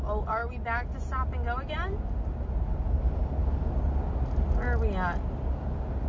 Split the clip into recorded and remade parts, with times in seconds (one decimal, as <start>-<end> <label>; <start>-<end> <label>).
0.0-6.1 recorded